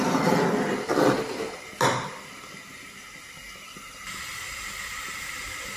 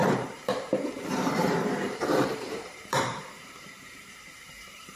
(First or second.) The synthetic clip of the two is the second